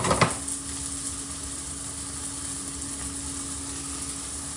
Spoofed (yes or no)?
no